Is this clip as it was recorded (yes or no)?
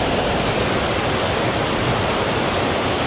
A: yes